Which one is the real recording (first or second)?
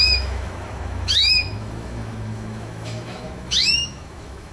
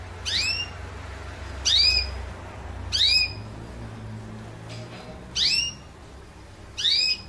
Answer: second